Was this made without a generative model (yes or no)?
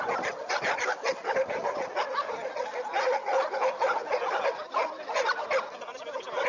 yes